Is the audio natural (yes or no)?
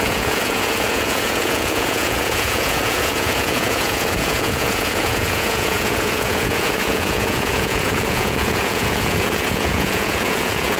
no